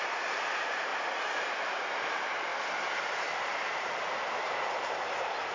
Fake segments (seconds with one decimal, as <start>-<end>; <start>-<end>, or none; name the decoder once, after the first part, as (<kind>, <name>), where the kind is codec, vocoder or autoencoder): 0.0-0.9 (vocoder, BigVGAN v2); 1.4-2.5; 3.0-5.5